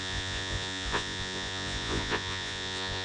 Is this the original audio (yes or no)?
no